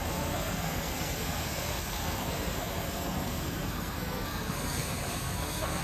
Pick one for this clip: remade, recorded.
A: remade